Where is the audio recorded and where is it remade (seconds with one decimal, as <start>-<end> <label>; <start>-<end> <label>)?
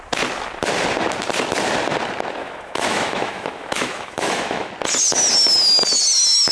0.0-2.4 recorded; 2.4-4.7 remade; 4.7-6.5 recorded